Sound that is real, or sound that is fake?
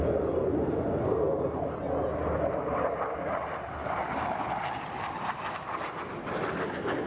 real